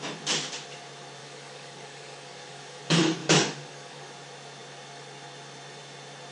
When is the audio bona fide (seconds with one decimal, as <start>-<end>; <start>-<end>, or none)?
0.0-1.2; 2.8-3.2; 4.1-6.3

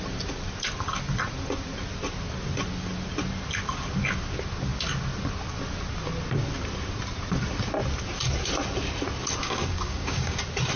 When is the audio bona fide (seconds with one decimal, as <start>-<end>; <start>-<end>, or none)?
0.0-9.4; 10.4-10.8

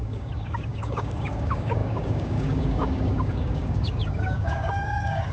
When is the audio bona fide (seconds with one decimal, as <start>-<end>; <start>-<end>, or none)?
none

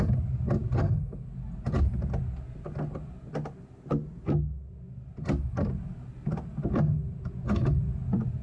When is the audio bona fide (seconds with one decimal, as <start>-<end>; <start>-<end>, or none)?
0.0-8.4